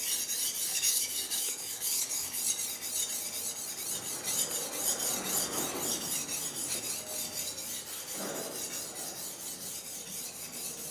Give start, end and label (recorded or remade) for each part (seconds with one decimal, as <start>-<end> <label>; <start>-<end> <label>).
0.0-0.7 recorded; 0.7-2.4 remade; 2.4-10.9 recorded